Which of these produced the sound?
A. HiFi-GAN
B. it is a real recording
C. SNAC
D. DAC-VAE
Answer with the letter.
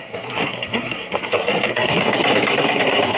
C